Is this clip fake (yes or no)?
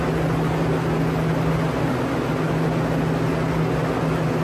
no